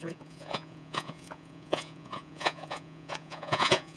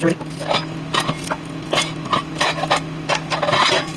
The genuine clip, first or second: second